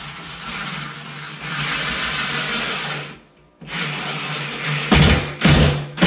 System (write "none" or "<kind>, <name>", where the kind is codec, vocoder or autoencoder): none